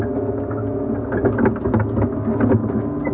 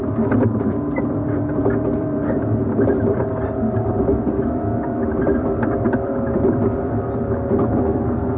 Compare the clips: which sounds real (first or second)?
first